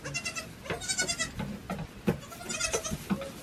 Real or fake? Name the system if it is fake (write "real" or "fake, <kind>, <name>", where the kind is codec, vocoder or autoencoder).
real